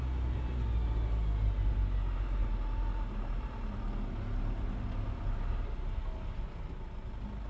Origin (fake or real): real